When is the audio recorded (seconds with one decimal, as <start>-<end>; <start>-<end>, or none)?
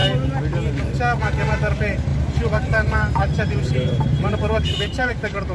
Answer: 0.0-2.1